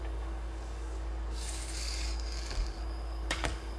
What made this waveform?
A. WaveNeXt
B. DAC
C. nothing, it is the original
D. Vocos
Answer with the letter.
B